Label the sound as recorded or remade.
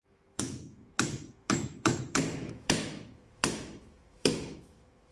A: remade